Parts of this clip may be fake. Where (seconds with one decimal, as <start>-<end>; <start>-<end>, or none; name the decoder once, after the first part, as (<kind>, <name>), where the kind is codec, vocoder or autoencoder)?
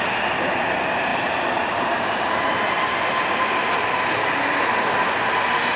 1.1-4.6 (vocoder, BigVGAN v2)